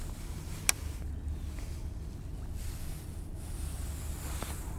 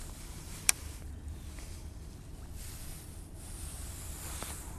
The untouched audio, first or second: first